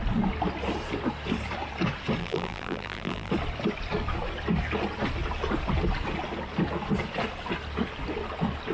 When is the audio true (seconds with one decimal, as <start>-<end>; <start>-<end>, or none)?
0.0-2.2; 3.3-8.7